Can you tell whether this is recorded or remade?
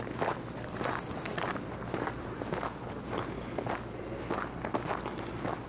recorded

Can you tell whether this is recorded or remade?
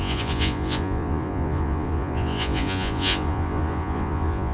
remade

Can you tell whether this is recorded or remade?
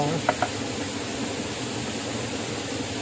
recorded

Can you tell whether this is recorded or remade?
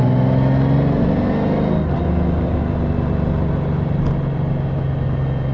recorded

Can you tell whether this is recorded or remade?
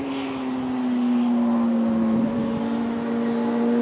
recorded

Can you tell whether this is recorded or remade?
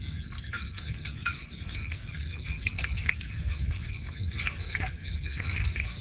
remade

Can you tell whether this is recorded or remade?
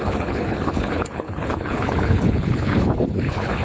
remade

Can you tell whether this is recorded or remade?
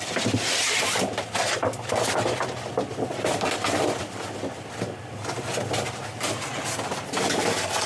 recorded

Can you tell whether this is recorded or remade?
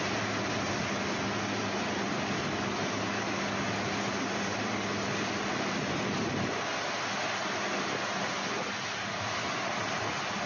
recorded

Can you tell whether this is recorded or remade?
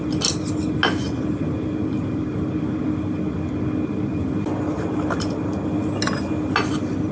recorded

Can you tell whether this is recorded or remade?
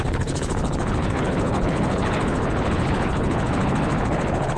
remade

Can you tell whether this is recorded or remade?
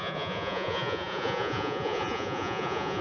remade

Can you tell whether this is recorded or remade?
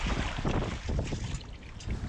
recorded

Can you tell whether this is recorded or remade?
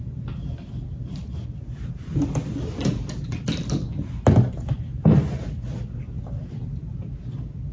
recorded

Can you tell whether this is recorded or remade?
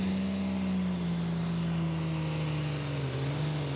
recorded